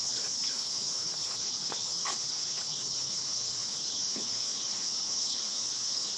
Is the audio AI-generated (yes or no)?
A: yes